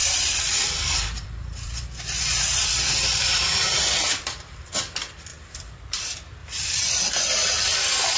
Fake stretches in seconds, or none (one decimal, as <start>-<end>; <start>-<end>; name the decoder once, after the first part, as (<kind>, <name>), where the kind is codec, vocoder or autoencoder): 0.0-4.7 (vocoder, BigVGAN v2); 5.3-6.0; 6.4-7.0

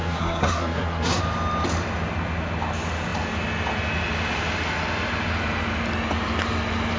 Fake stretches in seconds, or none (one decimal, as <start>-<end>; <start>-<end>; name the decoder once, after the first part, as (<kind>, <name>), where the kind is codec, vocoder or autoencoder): 0.0-1.2 (codec, SNAC)